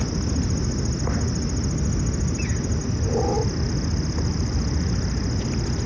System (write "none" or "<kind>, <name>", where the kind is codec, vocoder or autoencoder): none